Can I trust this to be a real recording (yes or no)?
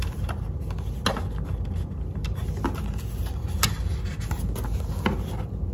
yes